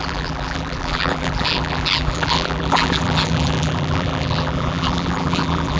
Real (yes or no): no